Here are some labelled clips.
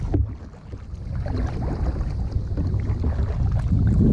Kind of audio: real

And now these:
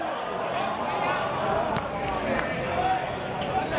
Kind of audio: real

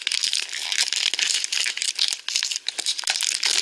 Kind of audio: real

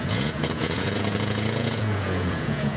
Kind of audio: fake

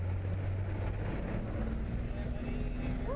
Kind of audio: real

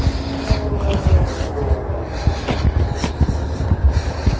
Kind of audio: real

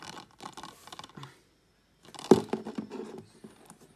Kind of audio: real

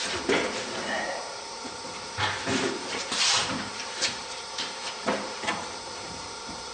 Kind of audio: fake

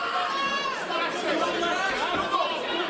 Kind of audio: fake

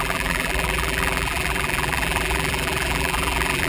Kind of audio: fake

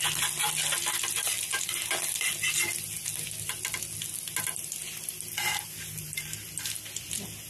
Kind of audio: real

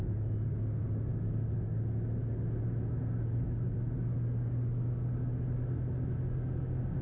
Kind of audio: real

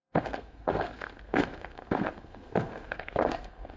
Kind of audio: fake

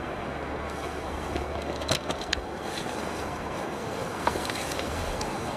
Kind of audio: fake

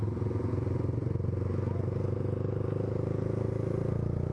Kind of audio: real